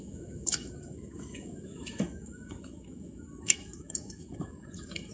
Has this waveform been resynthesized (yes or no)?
yes